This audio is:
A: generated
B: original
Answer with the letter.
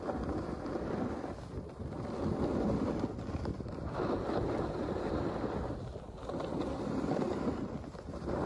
B